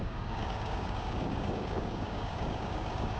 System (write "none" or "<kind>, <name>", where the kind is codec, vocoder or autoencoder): codec, DAC